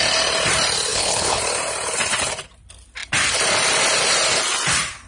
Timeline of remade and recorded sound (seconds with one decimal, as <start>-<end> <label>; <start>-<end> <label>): 0.0-0.9 recorded; 0.9-1.4 remade; 1.4-5.1 recorded